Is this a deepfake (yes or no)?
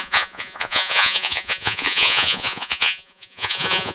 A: yes